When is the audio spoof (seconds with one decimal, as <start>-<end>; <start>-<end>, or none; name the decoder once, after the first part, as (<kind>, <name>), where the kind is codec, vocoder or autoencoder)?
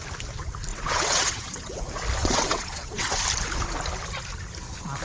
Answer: 0.7-1.8 (vocoder, WaveNeXt); 2.2-3.2